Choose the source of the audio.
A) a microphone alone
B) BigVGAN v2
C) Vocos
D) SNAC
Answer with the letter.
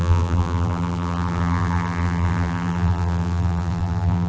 B